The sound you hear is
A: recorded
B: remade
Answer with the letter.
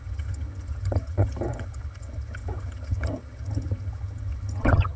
B